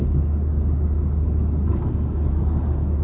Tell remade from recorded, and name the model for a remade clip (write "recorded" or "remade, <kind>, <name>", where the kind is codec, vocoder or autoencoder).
recorded